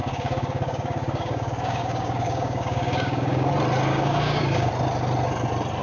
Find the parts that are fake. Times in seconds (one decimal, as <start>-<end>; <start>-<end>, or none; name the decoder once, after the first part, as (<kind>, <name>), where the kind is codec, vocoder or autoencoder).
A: 0.0-3.5 (codec, DAC); 3.9-4.7